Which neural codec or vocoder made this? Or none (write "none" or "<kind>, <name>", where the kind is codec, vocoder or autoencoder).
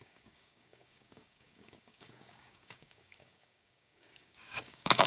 codec, DAC